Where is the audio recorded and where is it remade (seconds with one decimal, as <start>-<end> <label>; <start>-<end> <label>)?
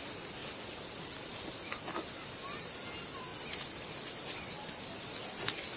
0.0-5.8 recorded